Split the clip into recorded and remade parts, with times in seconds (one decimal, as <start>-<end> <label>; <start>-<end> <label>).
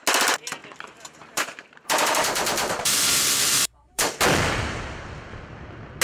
0.0-0.6 recorded; 0.6-4.2 remade; 4.2-6.0 recorded